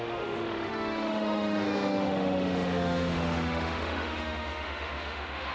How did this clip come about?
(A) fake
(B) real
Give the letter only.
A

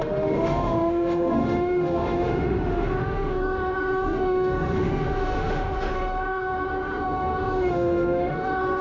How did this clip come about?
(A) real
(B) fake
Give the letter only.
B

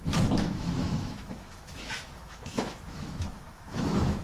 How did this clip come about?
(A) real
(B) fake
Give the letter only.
B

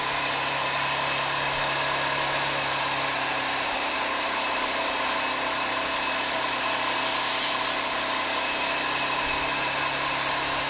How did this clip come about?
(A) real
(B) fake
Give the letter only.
A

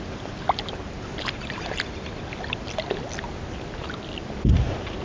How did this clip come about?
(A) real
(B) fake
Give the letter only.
A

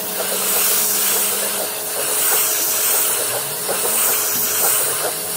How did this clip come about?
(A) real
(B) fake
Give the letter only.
A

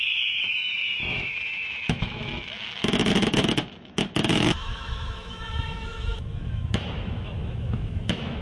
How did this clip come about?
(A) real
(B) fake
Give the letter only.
B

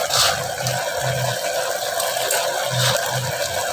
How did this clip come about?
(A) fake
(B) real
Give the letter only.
B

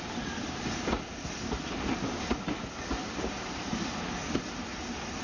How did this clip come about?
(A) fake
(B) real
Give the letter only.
B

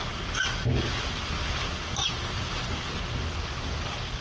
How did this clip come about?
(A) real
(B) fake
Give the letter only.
A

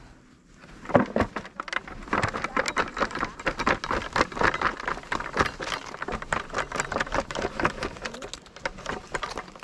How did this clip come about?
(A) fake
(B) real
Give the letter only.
B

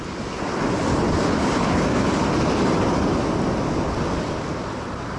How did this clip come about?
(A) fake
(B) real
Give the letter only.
B